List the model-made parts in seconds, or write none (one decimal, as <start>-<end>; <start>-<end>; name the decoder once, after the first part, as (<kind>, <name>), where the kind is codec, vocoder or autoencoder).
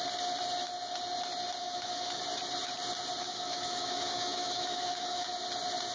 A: 1.6-2.2 (autoencoder, DAC-VAE); 3.2-5.3